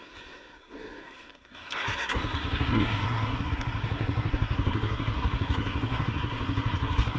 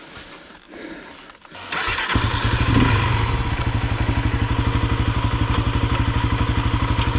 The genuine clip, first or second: second